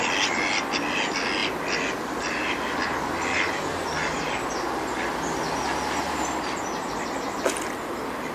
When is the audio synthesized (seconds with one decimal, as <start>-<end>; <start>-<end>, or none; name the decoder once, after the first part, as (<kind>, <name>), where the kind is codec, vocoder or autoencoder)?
none